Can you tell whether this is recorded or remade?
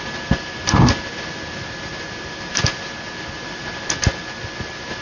recorded